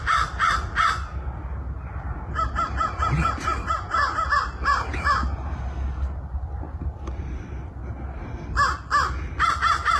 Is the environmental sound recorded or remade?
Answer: recorded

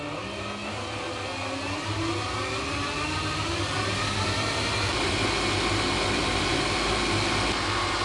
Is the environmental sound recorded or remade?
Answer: recorded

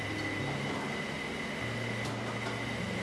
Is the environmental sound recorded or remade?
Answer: recorded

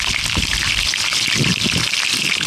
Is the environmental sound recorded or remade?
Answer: recorded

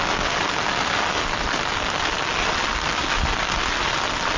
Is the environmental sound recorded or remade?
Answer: recorded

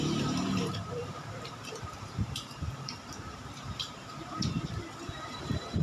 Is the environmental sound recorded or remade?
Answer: remade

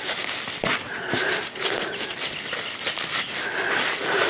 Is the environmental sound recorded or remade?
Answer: recorded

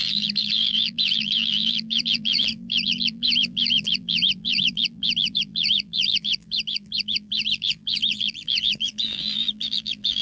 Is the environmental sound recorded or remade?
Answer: remade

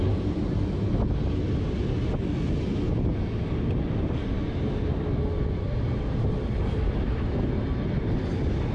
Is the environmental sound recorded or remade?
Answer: recorded